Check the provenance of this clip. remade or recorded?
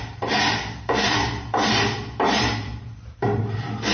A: remade